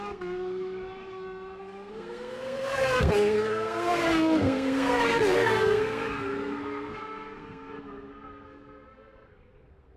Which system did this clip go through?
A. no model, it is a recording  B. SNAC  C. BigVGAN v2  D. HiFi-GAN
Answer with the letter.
B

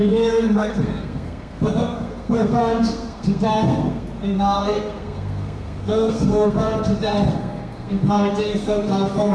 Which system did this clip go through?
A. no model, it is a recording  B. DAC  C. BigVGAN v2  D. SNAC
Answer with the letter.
D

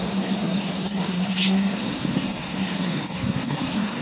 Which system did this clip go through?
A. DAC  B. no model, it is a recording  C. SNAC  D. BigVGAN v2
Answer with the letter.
C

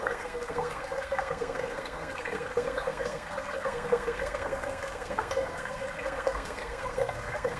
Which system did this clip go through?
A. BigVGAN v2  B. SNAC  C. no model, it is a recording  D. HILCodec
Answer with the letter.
B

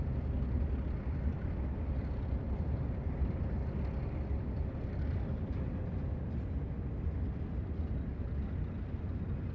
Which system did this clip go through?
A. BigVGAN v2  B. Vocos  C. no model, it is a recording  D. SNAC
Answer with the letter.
C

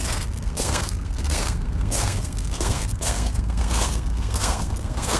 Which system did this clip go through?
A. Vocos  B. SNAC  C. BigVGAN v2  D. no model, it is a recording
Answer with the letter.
B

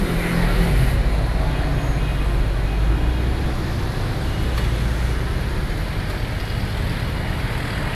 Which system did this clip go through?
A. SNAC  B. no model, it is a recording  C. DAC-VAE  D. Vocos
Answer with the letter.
B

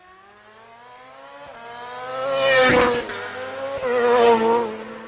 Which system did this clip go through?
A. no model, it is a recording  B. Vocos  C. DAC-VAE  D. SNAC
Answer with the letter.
A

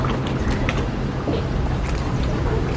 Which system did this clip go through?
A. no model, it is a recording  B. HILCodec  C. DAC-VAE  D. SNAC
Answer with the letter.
A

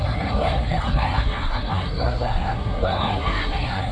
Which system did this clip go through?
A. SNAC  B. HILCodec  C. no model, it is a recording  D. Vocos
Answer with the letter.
A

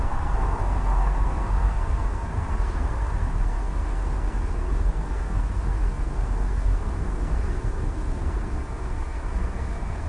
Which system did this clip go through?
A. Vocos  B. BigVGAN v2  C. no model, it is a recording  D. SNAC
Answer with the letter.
D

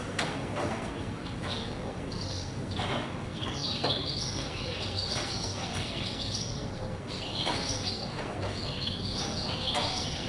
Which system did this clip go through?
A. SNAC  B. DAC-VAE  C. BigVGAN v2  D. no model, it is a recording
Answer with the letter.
A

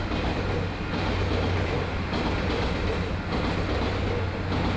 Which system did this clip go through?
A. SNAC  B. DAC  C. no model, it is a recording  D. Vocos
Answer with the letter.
C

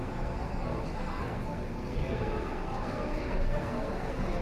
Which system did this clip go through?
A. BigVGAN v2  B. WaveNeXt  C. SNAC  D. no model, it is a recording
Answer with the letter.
C